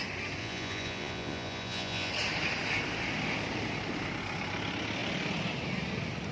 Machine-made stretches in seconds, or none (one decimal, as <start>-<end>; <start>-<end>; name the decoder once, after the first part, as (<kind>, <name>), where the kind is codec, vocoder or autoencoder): 0.4-2.1 (vocoder, Vocos)